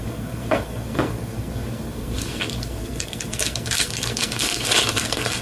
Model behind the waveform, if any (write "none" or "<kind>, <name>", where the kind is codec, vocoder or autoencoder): codec, SNAC